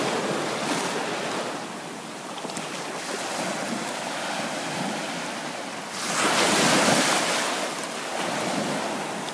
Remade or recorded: recorded